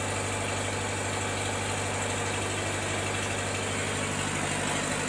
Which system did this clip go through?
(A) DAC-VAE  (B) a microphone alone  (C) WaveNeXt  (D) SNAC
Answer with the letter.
B